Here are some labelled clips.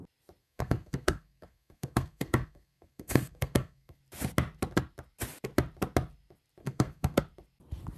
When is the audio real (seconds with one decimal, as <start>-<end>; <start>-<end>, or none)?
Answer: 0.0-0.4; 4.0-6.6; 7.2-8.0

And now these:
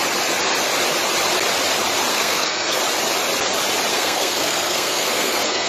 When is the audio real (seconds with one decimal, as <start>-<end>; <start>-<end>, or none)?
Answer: 0.0-2.1; 2.8-3.9

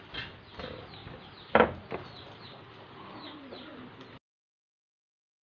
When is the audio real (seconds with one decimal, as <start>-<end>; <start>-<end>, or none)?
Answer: 0.0-5.4